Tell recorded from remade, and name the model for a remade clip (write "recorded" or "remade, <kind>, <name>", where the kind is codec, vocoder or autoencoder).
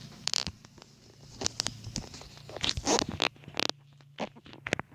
recorded